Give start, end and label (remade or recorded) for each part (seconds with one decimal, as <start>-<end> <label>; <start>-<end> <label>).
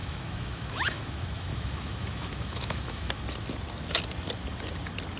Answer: 0.0-3.1 remade; 3.1-5.2 recorded